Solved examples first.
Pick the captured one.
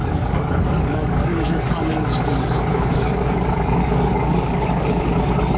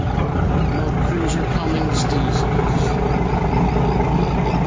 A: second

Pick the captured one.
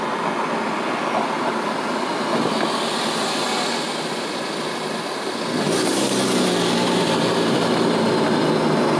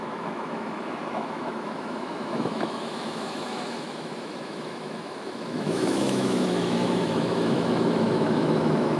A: first